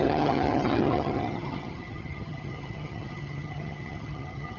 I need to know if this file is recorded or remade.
remade